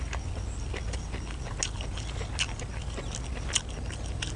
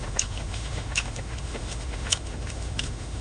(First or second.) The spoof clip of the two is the second